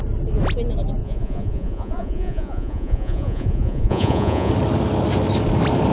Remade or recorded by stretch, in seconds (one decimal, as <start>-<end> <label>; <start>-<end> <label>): 0.0-1.0 recorded; 1.0-4.5 remade; 4.5-5.9 recorded